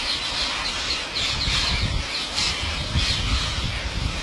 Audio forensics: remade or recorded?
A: recorded